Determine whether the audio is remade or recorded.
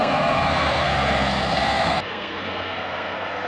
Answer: remade